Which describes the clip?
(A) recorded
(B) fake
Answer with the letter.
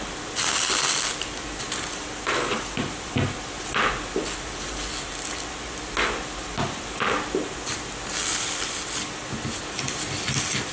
A